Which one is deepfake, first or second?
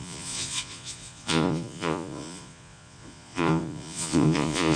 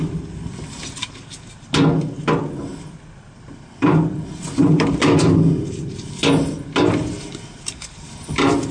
first